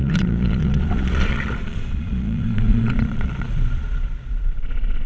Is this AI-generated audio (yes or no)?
yes